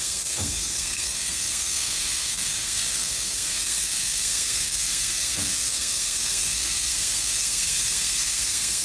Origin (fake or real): fake